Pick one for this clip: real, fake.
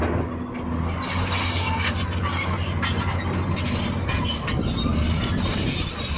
real